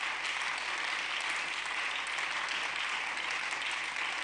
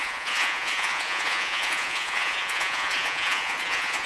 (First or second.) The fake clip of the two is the second